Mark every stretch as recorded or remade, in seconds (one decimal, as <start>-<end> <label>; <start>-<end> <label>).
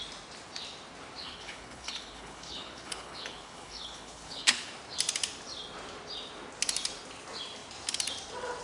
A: 0.0-1.2 recorded; 1.2-4.7 remade; 4.7-8.6 recorded